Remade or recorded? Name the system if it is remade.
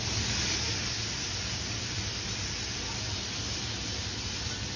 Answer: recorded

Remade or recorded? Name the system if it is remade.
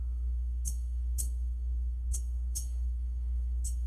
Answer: remade, codec, DAC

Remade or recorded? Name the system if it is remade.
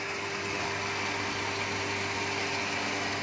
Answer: recorded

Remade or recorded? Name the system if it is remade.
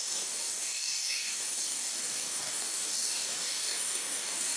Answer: remade, codec, DAC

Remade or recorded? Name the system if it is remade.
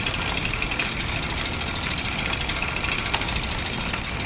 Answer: recorded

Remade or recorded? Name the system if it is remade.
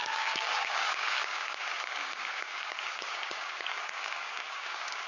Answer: remade, codec, DAC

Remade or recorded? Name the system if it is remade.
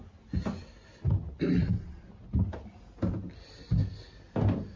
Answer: recorded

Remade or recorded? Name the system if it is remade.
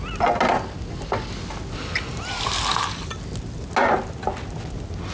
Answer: recorded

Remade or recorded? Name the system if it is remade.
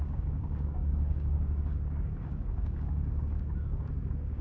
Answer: remade, codec, DAC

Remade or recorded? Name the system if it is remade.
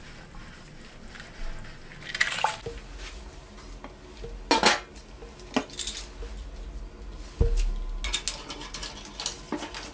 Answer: recorded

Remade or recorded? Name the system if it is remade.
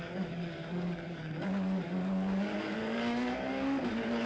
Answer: remade, codec, DAC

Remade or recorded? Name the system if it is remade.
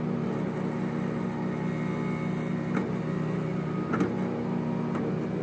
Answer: recorded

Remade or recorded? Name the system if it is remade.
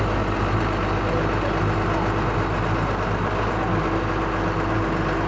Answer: recorded